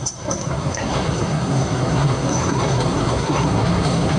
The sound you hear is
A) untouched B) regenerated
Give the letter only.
B